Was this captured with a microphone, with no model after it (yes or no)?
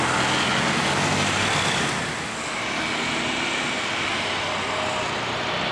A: yes